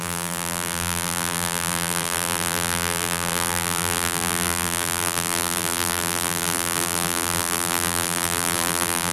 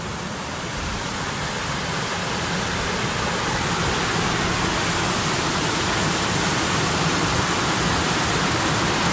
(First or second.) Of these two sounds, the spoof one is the first